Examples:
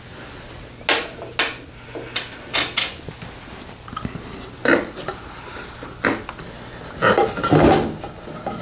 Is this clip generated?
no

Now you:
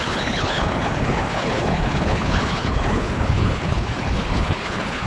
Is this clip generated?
yes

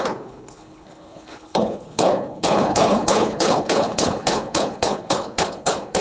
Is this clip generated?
yes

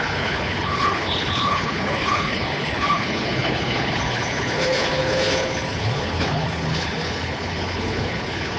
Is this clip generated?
yes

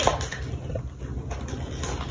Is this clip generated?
no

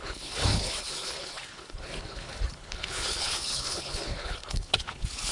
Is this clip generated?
yes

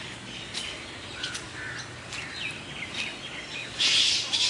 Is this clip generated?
no